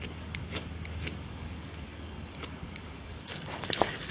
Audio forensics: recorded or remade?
remade